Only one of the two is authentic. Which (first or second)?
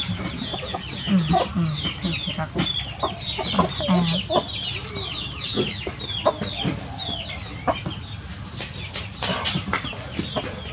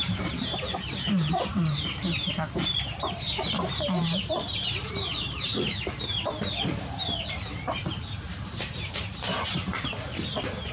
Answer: first